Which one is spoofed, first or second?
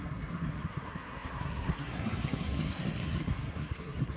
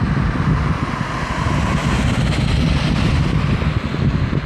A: first